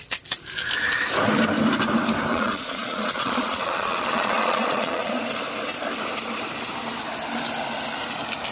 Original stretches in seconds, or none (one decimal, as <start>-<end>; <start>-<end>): 0.0-2.3; 5.2-8.5